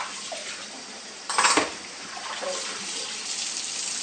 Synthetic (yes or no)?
yes